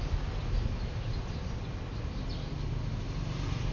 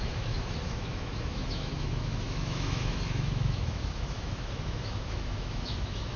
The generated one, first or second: second